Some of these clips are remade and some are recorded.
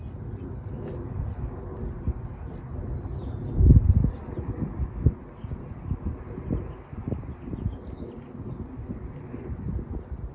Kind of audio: recorded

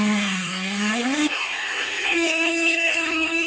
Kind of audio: remade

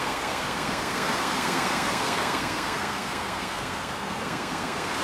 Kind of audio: remade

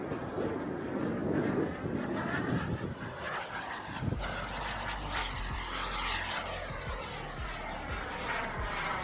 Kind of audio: recorded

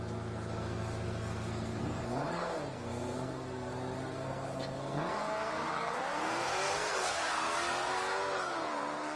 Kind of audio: remade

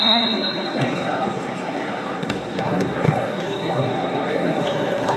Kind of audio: remade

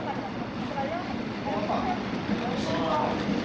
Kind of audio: recorded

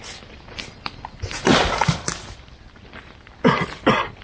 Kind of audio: recorded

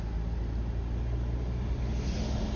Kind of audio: recorded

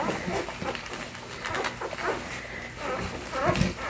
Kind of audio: recorded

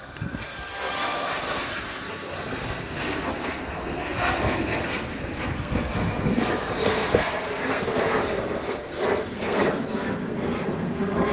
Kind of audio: remade